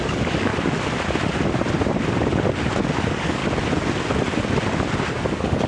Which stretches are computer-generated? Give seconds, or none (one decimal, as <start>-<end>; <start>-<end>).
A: 0.0-0.5; 3.0-3.4; 5.1-5.7